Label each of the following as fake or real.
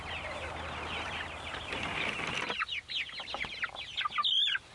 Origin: real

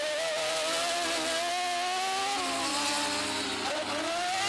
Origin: real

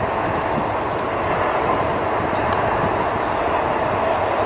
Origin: real